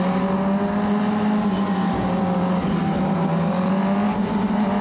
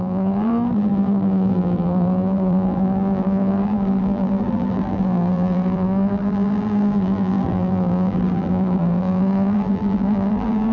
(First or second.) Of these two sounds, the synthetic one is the second